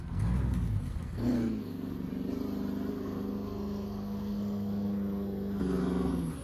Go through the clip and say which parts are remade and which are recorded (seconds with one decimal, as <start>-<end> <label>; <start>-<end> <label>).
0.0-2.1 remade; 2.1-2.9 recorded; 2.9-6.4 remade

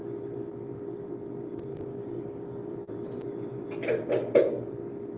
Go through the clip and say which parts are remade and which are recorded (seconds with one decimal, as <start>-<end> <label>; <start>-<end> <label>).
0.0-1.7 recorded; 1.7-2.7 remade; 2.7-4.2 recorded; 4.2-4.7 remade; 4.7-5.2 recorded

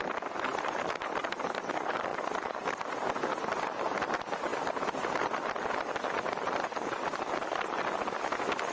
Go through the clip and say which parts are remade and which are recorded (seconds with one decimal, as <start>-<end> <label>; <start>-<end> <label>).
0.0-0.5 recorded; 0.5-1.2 remade; 1.2-2.1 recorded; 2.1-2.9 remade; 2.9-8.7 recorded

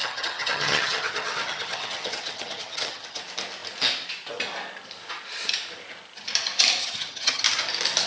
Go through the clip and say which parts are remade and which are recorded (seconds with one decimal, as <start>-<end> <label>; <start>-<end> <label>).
0.0-3.2 remade; 3.2-6.8 recorded; 6.8-7.4 remade; 7.4-8.1 recorded